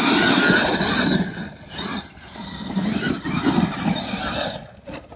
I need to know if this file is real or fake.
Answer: real